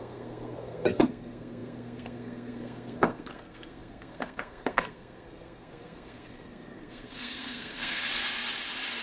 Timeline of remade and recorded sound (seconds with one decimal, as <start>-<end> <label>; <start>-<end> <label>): 0.0-8.1 remade; 8.1-9.0 recorded